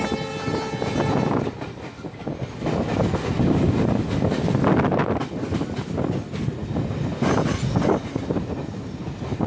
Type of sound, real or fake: real